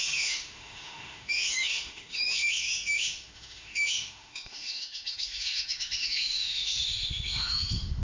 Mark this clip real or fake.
fake